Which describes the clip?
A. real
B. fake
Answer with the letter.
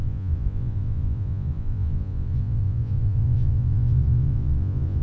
B